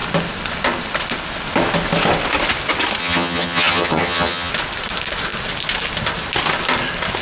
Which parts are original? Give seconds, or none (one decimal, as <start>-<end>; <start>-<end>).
0.0-3.0; 4.5-7.2